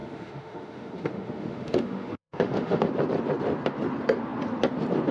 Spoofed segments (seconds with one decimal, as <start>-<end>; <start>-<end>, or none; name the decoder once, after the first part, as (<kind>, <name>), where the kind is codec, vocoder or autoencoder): 0.0-2.8 (autoencoder, DAC-VAE)